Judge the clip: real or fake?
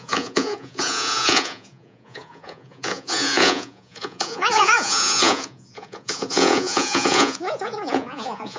fake